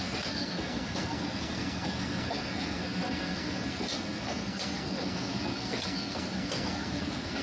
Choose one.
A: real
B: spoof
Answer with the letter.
B